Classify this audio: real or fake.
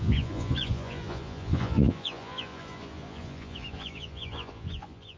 fake